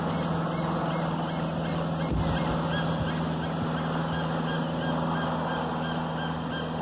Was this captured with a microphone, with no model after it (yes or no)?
yes